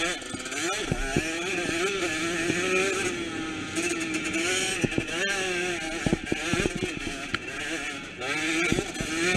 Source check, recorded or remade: recorded